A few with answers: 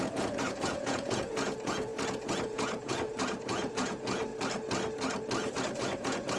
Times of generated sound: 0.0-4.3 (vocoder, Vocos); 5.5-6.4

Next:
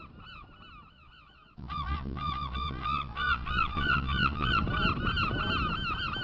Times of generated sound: 0.9-4.6 (vocoder, Vocos)